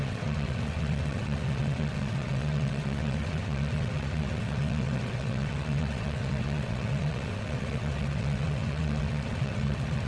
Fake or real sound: fake